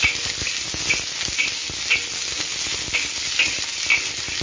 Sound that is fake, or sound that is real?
real